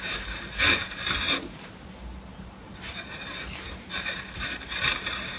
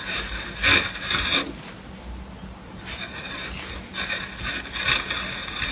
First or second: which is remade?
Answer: first